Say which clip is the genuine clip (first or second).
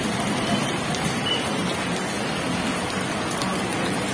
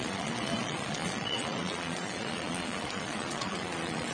first